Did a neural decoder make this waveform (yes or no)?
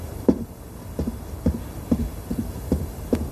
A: no